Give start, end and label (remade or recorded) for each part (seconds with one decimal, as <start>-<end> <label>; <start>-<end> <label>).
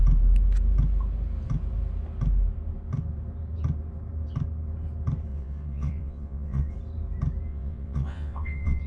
0.0-5.3 recorded; 5.3-6.7 remade; 6.7-7.5 recorded; 7.5-8.9 remade